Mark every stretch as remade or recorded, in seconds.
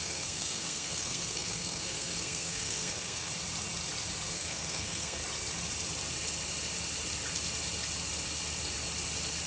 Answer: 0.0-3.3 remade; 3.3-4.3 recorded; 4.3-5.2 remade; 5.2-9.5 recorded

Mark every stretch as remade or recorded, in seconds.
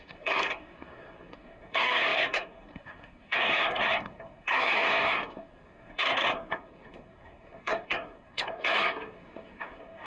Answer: 0.0-10.1 remade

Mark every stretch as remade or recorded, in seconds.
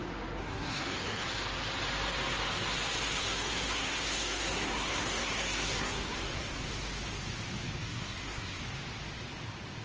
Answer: 0.0-0.4 recorded; 0.4-1.3 remade; 1.3-3.2 recorded; 3.2-6.7 remade; 6.7-7.8 recorded; 7.8-8.6 remade; 8.6-9.8 recorded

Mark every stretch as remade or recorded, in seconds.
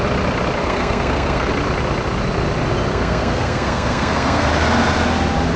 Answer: 0.0-0.6 recorded; 0.6-1.5 remade; 1.5-2.9 recorded; 2.9-4.5 remade; 4.5-5.6 recorded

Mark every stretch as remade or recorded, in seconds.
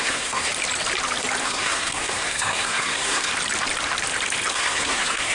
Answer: 0.0-0.5 remade; 0.5-1.4 recorded; 1.4-3.3 remade; 3.3-4.5 recorded; 4.5-5.3 remade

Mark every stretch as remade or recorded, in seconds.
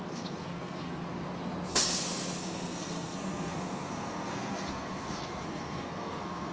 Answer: 0.0-1.0 remade; 1.0-1.7 recorded; 1.7-6.5 remade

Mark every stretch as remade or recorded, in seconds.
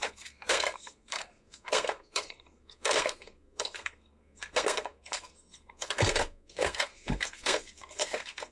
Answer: 0.0-8.5 remade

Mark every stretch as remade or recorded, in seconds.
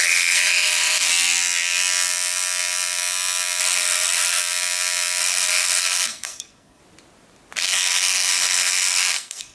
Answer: 0.0-1.1 remade; 1.1-3.6 recorded; 3.6-4.4 remade; 4.4-5.2 recorded; 5.2-6.8 remade; 6.8-7.6 recorded; 7.6-9.5 remade